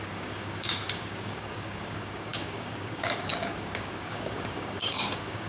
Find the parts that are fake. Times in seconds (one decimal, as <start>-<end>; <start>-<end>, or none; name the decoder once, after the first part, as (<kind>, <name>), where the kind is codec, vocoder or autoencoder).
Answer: 0.0-5.5 (codec, DAC)